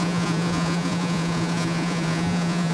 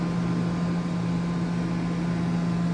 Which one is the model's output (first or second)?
first